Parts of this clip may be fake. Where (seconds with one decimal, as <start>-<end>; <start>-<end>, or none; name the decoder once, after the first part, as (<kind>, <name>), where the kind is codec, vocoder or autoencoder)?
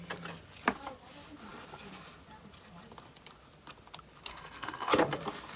4.3-4.9 (codec, SNAC)